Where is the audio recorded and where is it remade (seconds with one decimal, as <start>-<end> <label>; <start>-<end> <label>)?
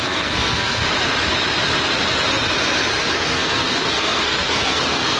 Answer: 0.0-0.8 remade; 0.8-2.9 recorded; 2.9-5.2 remade